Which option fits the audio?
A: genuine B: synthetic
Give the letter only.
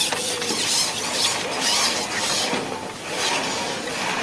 A